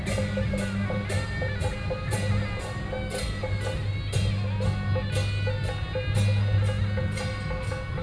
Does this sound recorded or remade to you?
recorded